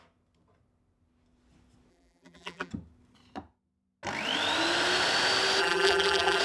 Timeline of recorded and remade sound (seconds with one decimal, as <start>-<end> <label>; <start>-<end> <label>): 0.0-1.9 recorded; 1.9-2.7 remade; 2.7-5.6 recorded; 5.6-6.4 remade